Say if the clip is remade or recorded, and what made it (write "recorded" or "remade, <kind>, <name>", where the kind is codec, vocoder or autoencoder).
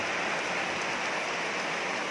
recorded